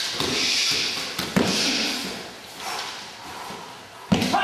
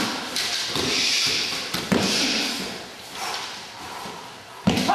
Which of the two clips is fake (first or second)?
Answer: second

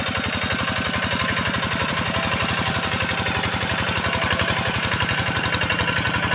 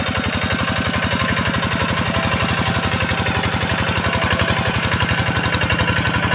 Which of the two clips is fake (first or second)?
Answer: first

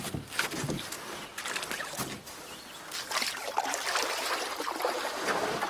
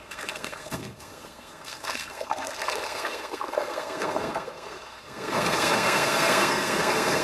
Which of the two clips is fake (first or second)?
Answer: second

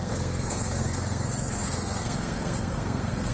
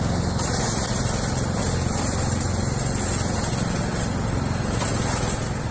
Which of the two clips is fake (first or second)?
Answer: first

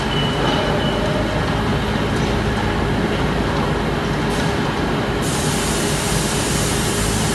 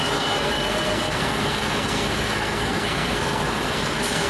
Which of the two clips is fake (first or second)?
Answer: second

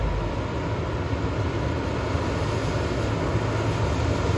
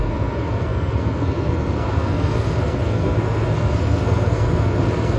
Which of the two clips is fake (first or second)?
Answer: second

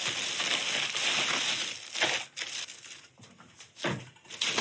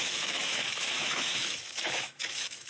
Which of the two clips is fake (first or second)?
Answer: second